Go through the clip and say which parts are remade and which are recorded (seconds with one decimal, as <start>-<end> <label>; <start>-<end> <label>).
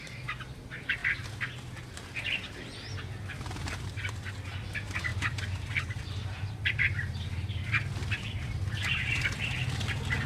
0.0-5.1 recorded; 5.1-7.7 remade; 7.7-10.3 recorded